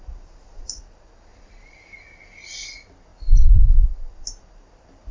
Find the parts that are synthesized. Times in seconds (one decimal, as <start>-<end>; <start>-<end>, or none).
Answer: none